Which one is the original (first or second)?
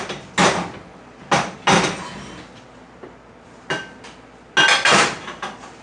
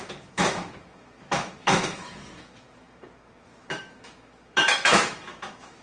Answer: first